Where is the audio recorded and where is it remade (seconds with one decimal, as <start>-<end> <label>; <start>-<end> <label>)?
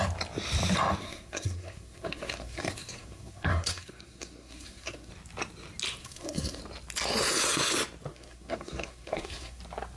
0.0-1.0 recorded; 1.0-5.1 remade; 5.1-6.0 recorded; 6.0-6.6 remade; 6.6-8.1 recorded; 8.1-9.6 remade; 9.6-10.0 recorded